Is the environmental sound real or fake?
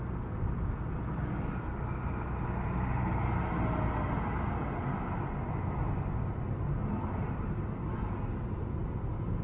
real